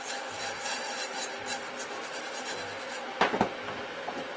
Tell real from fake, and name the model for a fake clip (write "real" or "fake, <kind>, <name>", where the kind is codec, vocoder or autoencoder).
real